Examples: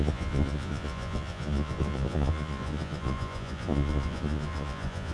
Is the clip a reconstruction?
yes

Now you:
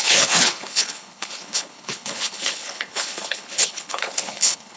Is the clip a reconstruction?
yes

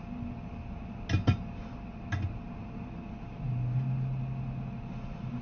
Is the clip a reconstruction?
no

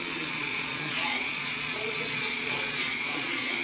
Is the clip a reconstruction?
yes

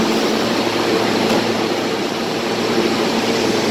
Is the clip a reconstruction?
yes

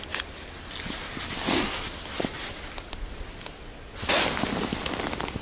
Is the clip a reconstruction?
no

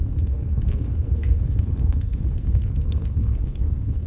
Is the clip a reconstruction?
yes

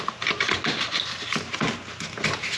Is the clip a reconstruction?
no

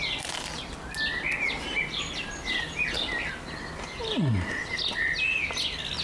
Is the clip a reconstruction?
no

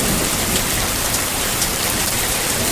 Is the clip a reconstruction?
yes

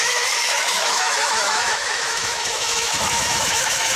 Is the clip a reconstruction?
yes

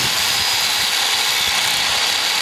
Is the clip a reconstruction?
no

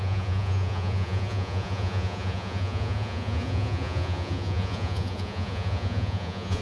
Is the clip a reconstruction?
yes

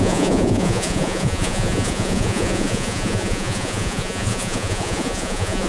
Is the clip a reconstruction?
yes